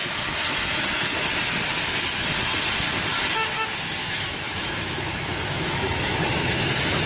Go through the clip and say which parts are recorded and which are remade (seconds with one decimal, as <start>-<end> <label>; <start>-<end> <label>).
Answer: 0.0-4.0 recorded; 4.0-6.6 remade; 6.6-7.1 recorded